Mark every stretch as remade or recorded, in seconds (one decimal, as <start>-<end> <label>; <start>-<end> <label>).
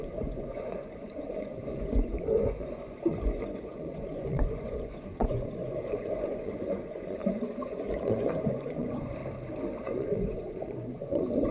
0.0-9.2 remade; 9.2-9.8 recorded; 9.8-11.5 remade